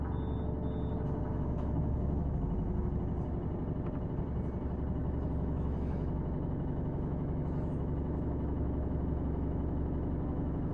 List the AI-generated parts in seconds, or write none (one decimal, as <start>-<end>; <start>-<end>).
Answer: 1.3-3.0; 5.0-10.7